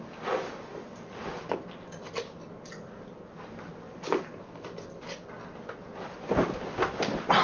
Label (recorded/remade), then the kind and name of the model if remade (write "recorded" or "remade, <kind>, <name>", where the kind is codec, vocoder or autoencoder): recorded